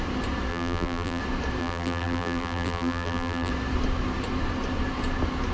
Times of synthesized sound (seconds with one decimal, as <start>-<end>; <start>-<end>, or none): 0.5-1.2; 1.6-3.5